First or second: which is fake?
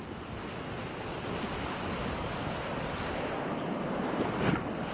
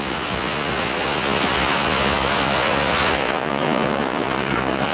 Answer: second